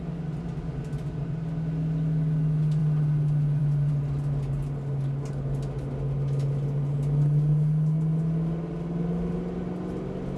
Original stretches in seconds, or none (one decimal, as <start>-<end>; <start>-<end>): 0.0-10.4